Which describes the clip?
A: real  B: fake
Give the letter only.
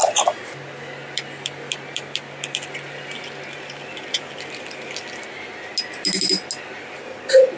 A